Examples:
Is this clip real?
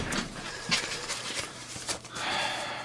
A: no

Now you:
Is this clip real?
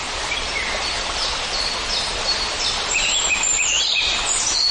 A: yes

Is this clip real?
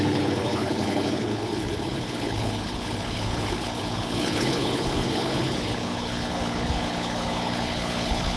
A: no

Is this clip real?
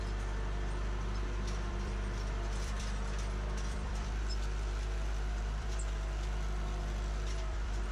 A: no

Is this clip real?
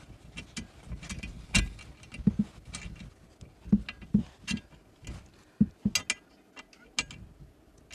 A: yes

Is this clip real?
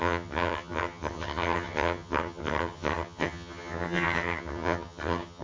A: no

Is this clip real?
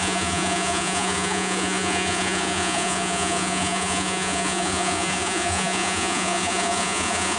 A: no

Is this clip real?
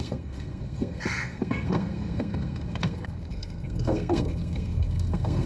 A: no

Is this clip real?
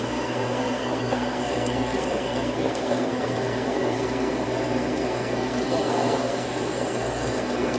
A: no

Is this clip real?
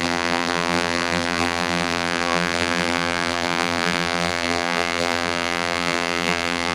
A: no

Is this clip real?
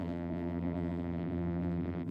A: no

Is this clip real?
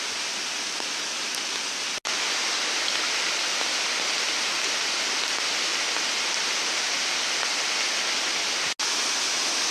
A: yes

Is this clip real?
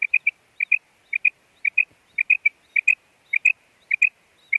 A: yes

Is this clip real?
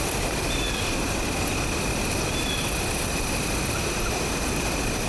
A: yes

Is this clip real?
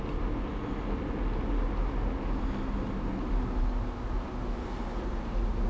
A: yes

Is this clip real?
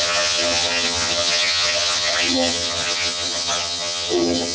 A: no